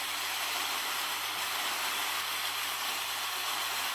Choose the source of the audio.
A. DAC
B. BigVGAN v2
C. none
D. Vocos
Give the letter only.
B